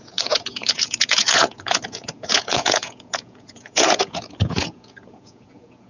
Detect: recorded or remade remade